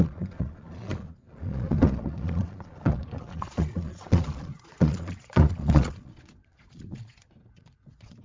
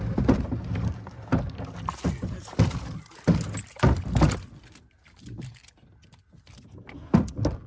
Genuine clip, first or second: second